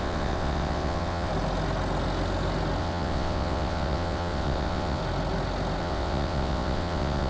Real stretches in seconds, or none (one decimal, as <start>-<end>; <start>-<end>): 1.3-2.8; 5.0-5.8